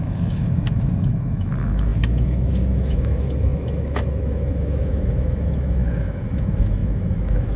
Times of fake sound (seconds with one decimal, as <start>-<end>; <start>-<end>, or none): 0.0-7.6